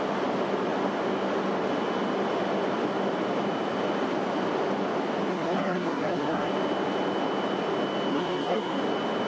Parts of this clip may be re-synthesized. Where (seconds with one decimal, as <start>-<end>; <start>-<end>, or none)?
5.3-6.5; 8.1-8.8